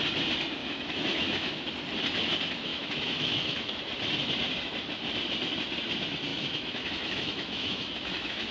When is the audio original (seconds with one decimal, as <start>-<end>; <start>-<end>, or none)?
0.0-0.6; 1.7-2.7; 3.8-6.3